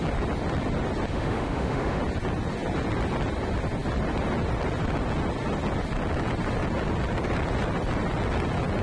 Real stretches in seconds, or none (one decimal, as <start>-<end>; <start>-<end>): 0.0-1.1; 2.0-8.8